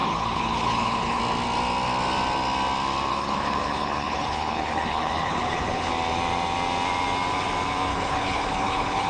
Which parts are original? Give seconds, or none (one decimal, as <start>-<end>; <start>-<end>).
1.2-3.1; 5.9-7.9